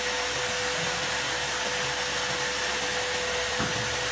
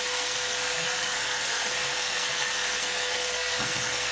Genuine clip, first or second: first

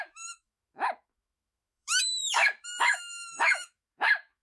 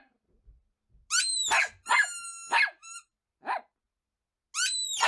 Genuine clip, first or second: second